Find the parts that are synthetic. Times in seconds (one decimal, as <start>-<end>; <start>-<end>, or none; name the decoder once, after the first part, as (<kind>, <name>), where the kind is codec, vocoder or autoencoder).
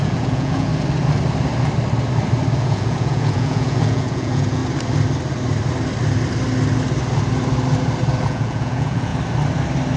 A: 0.0-0.7 (vocoder, Vocos); 2.6-4.6; 8.2-9.1